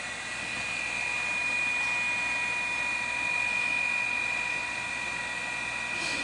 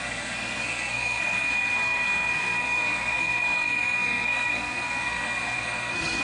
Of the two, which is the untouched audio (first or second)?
first